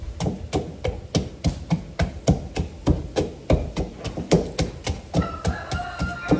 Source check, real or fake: real